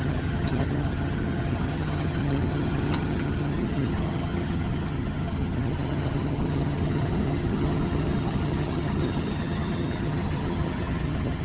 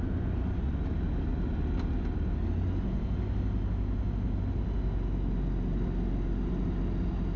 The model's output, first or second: first